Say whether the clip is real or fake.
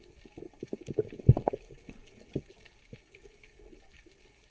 real